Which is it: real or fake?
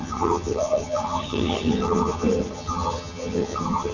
fake